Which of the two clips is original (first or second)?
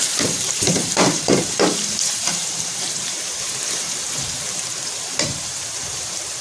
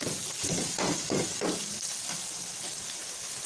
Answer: second